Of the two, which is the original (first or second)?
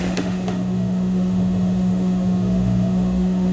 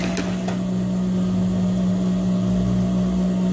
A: second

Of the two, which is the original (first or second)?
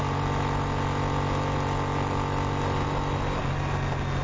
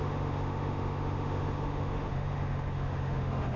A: first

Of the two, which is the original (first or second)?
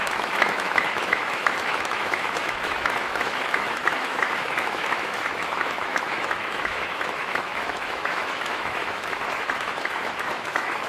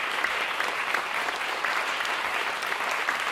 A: second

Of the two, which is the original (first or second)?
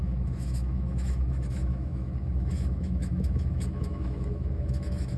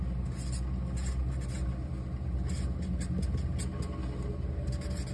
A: second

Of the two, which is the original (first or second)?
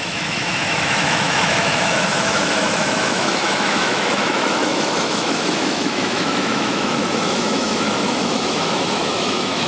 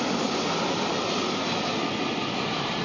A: second